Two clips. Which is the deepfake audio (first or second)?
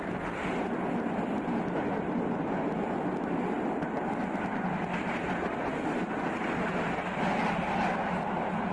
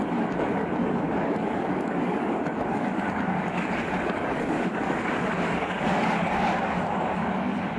second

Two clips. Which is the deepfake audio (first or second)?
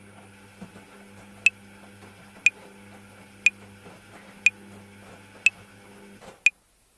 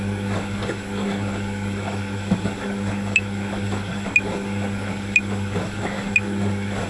second